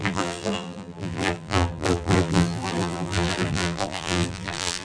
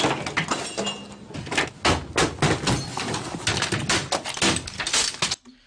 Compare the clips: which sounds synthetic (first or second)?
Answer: first